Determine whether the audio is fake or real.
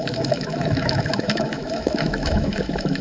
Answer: fake